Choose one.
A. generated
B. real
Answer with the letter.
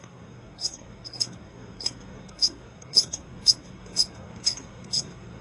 A